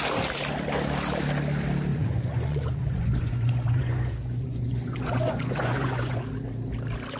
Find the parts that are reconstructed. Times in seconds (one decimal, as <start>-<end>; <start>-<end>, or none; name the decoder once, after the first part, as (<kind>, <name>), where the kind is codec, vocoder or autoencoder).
1.9-6.2 (vocoder, Vocos)